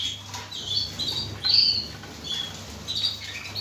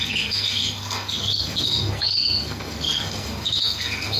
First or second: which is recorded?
first